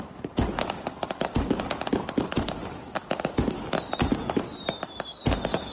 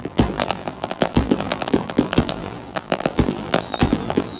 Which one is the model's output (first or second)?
second